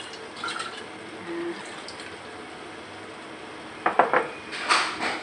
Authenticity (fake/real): real